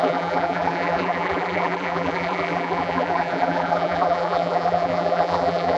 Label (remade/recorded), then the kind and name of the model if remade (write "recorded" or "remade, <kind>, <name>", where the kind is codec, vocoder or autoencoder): remade, vocoder, BigVGAN v2